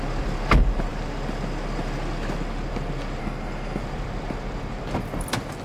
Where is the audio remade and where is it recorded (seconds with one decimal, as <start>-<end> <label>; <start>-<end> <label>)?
0.0-3.2 recorded; 3.2-3.8 remade; 3.8-5.6 recorded

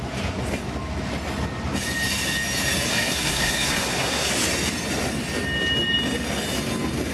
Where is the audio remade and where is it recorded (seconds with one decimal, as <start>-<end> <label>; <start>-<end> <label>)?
0.0-2.9 recorded; 2.9-4.3 remade; 4.3-7.1 recorded

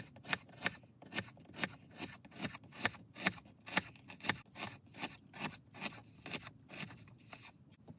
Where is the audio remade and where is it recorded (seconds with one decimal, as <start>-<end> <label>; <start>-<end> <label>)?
0.0-8.0 recorded

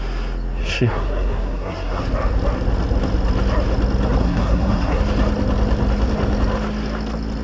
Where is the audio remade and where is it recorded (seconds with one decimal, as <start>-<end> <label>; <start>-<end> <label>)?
0.0-0.6 recorded; 0.6-2.0 remade; 2.0-4.2 recorded; 4.2-5.0 remade; 5.0-7.4 recorded